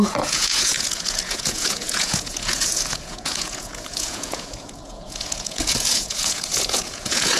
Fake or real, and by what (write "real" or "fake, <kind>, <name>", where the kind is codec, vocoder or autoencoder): fake, vocoder, Vocos